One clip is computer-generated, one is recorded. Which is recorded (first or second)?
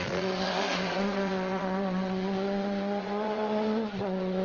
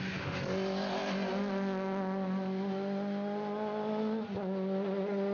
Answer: second